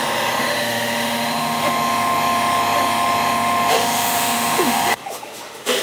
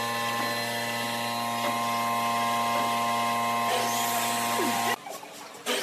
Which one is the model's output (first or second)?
first